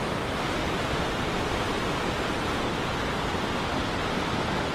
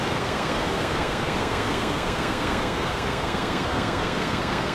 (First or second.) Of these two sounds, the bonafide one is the first